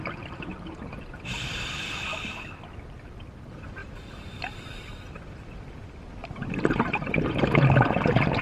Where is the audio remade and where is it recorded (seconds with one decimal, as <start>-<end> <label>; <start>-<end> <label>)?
0.0-2.1 remade; 2.1-2.7 recorded; 2.7-3.8 remade; 3.8-5.1 recorded; 5.1-6.2 remade; 6.2-6.8 recorded; 6.8-8.4 remade

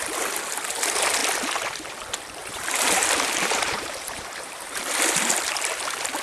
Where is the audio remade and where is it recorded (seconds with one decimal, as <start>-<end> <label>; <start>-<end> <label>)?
0.0-2.4 recorded; 2.4-4.8 remade; 4.8-6.2 recorded

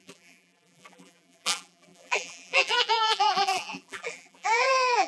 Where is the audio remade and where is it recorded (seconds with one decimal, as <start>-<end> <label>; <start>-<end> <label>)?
0.0-5.1 remade

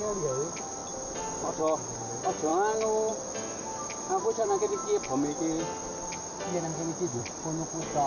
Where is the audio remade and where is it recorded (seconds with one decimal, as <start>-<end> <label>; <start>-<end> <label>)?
0.0-0.8 recorded; 0.8-1.5 remade; 1.5-6.7 recorded; 6.7-8.1 remade